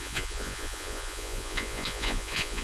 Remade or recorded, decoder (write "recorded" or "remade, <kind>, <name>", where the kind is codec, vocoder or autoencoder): remade, vocoder, Vocos